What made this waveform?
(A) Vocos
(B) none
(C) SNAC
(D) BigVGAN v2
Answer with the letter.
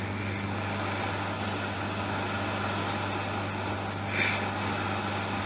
B